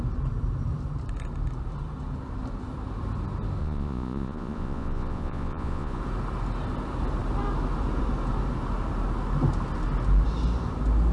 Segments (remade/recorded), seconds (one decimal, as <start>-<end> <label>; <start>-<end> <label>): 0.0-3.6 recorded; 3.6-6.0 remade; 6.0-11.1 recorded